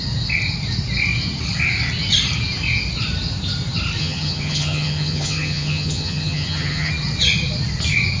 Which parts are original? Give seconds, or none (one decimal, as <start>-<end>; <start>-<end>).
0.0-4.0; 6.9-8.2